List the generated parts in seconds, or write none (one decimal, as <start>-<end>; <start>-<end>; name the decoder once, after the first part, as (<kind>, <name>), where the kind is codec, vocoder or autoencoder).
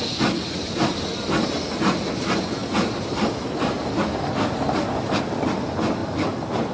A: 2.6-3.8 (vocoder, BigVGAN v2); 6.0-6.7